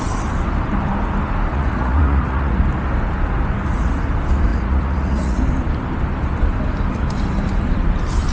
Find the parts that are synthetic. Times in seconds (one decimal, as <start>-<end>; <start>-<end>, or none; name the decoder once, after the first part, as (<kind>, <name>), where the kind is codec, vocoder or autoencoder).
1.5-2.6 (vocoder, Vocos); 4.5-5.4